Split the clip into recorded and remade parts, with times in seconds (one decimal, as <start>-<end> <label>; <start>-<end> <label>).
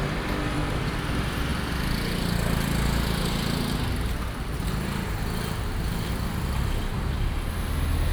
0.0-1.5 remade; 1.5-6.1 recorded; 6.1-6.9 remade; 6.9-7.5 recorded; 7.5-8.1 remade